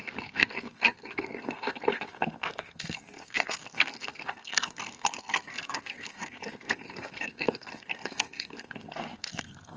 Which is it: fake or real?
fake